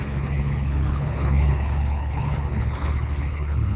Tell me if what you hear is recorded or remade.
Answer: remade